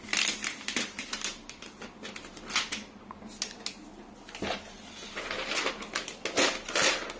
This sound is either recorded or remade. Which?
recorded